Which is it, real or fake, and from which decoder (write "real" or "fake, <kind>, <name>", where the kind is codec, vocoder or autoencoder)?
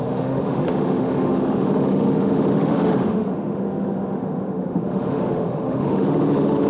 fake, autoencoder, DAC-VAE